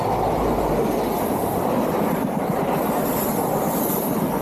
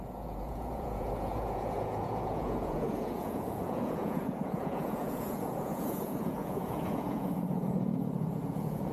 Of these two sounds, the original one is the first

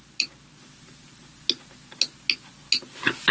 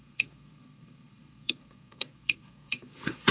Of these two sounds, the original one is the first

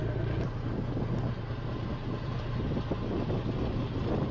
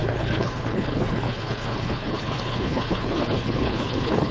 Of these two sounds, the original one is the first